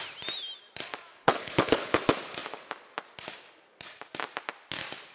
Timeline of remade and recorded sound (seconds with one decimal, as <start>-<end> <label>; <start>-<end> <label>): 0.0-1.1 recorded; 1.1-2.0 remade; 2.0-5.1 recorded